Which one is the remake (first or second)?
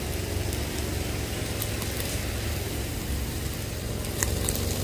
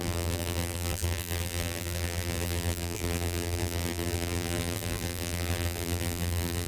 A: second